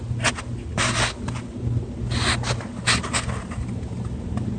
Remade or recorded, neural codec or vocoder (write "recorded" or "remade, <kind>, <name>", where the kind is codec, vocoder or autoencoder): recorded